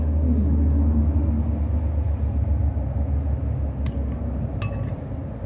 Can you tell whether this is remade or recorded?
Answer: recorded